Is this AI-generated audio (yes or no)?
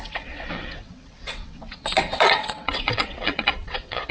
yes